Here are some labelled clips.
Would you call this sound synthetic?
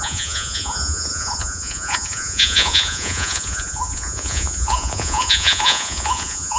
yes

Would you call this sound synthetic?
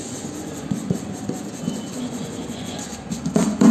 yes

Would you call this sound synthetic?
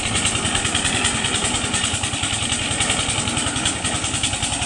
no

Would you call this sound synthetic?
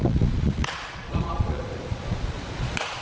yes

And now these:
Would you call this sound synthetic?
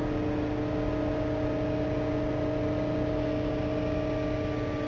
no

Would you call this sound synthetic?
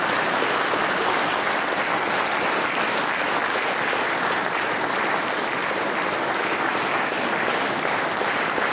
no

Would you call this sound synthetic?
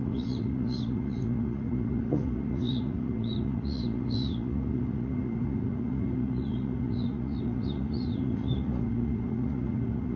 yes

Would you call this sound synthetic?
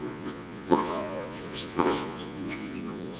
yes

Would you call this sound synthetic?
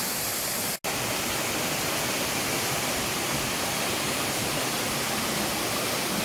no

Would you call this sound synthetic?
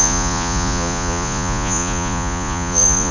yes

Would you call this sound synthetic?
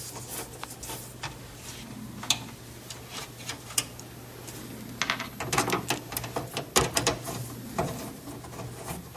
no